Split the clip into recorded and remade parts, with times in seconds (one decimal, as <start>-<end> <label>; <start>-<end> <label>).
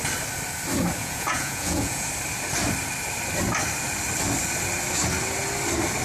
0.0-1.0 recorded; 1.0-2.1 remade; 2.1-6.0 recorded